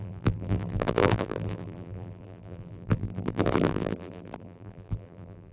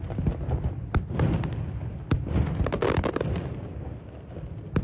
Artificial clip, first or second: first